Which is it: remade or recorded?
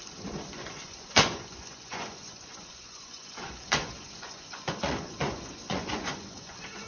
remade